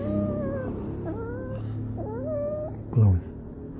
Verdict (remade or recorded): recorded